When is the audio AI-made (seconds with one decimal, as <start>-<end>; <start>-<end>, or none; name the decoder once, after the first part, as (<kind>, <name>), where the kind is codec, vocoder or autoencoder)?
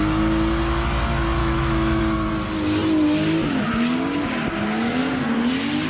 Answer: 1.4-2.0 (autoencoder, DAC-VAE)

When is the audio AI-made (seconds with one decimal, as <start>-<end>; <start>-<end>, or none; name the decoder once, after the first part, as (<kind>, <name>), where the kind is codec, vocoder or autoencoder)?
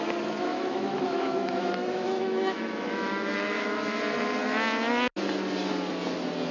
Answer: 0.5-4.0 (autoencoder, DAC-VAE)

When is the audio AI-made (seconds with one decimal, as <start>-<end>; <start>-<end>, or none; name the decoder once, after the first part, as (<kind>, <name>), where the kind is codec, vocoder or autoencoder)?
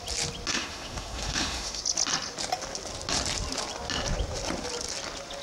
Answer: 0.5-1.8 (autoencoder, DAC-VAE)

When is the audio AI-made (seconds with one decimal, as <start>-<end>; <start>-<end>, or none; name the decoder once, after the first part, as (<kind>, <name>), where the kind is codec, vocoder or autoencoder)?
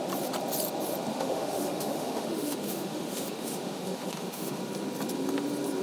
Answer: 1.1-4.6 (autoencoder, DAC-VAE)